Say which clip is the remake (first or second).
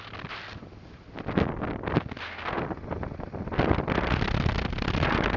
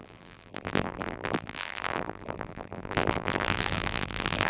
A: second